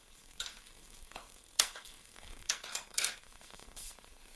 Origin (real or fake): fake